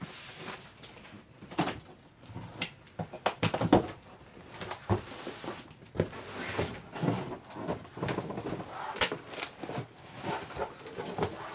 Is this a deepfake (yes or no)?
no